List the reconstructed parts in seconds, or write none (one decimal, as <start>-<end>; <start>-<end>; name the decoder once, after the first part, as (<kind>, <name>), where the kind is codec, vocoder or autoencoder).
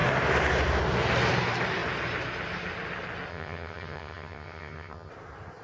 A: 3.3-5.1 (vocoder, HiFi-GAN)